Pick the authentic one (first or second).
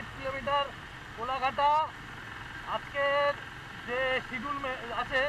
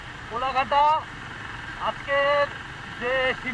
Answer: first